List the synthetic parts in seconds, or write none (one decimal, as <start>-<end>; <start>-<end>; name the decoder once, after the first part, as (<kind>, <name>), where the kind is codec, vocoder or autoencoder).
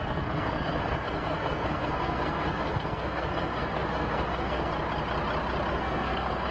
0.0-4.7 (codec, SNAC); 5.7-6.5